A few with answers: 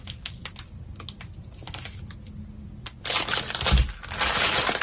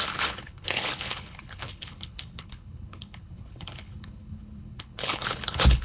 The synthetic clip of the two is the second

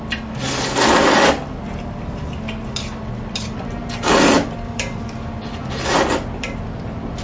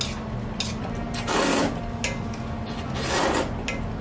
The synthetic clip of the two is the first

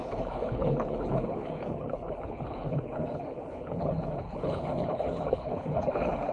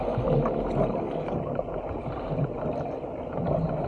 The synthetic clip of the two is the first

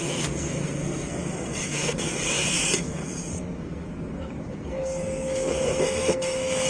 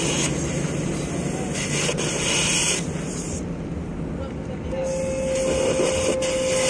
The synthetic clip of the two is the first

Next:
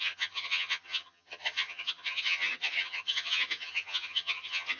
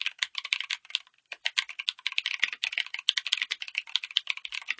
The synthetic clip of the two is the first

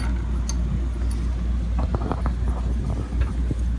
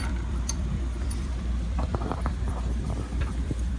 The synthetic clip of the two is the second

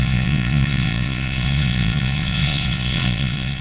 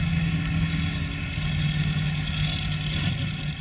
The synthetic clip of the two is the first